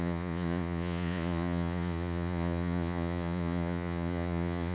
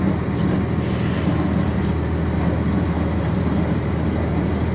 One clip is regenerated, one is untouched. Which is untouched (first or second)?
second